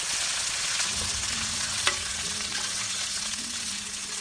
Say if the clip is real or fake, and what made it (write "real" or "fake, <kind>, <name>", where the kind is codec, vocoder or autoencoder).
fake, vocoder, WaveNeXt